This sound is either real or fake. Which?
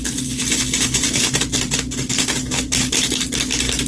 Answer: real